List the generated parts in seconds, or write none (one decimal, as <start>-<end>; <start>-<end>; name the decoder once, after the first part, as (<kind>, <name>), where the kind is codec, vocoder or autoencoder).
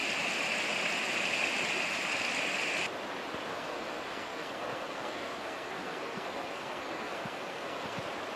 3.5-8.0 (codec, SNAC)